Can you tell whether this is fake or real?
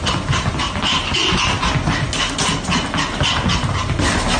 real